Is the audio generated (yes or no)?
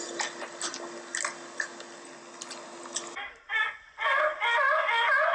no